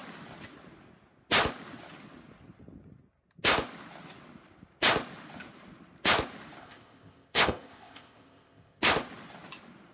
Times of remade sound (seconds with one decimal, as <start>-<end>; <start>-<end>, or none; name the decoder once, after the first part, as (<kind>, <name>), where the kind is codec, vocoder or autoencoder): 6.6-8.8 (codec, ZipCodec)